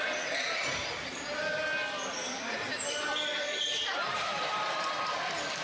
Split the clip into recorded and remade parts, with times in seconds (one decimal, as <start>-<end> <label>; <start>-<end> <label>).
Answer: 0.0-3.7 recorded; 3.7-4.8 remade; 4.8-5.6 recorded